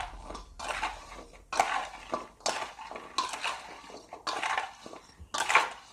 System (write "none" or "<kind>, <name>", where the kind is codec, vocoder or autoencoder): none